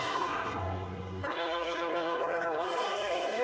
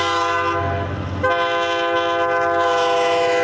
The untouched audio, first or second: second